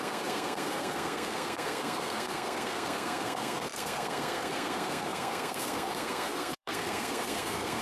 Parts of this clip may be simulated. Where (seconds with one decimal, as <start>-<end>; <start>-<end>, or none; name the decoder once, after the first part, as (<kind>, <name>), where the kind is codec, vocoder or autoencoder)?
0.0-7.8 (codec, SNAC)